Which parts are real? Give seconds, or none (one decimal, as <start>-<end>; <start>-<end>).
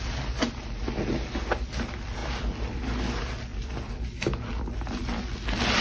0.0-5.8